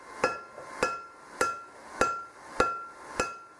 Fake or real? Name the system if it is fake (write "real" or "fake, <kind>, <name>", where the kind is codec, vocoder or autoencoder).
real